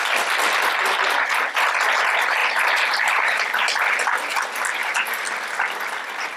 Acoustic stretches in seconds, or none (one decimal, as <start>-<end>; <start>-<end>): 0.0-2.4; 3.4-4.8; 5.5-6.4